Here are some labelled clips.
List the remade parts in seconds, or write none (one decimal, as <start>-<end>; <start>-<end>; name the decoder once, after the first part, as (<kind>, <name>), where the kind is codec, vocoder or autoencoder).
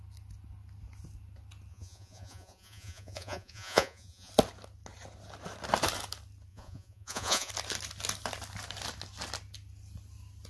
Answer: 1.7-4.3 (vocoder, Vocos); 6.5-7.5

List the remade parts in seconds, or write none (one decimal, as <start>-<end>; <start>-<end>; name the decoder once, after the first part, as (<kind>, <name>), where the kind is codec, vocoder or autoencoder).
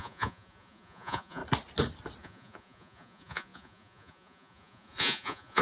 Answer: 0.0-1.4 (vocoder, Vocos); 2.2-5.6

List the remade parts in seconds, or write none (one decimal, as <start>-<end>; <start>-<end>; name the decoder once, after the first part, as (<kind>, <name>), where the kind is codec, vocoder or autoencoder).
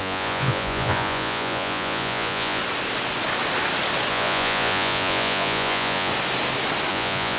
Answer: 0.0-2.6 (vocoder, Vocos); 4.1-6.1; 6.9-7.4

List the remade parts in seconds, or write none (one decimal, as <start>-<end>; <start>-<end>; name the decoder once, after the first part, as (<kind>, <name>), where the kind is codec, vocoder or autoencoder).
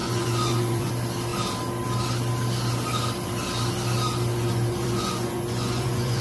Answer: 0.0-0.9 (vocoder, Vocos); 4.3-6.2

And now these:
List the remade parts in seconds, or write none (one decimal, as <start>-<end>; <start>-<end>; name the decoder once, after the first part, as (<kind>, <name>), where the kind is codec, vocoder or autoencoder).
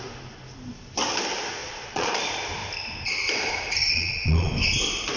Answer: 1.6-2.1 (vocoder, Vocos); 3.9-4.5